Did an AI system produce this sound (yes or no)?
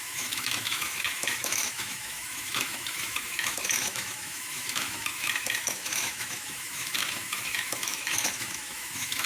yes